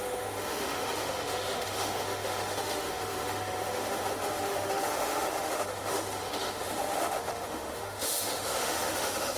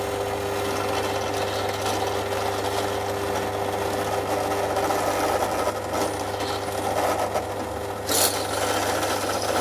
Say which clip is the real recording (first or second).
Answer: second